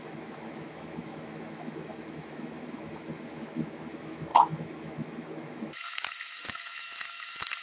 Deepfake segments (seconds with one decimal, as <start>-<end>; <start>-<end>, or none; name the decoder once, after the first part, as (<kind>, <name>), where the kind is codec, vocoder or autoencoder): 0.0-7.6 (autoencoder, DAC-VAE)